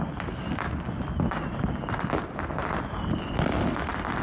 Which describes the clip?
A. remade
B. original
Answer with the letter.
B